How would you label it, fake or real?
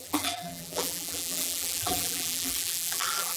fake